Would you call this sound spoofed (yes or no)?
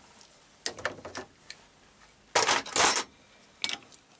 no